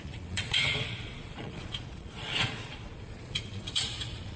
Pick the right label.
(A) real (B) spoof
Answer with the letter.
B